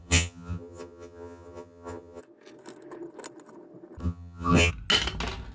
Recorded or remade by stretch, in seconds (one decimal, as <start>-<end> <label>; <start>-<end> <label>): 0.0-2.2 remade; 2.2-4.0 recorded; 4.0-4.7 remade; 4.7-5.5 recorded